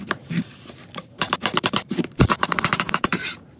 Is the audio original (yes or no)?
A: no